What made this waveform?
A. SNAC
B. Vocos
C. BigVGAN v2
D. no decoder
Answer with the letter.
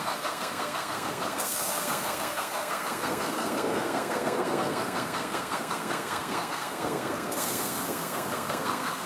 A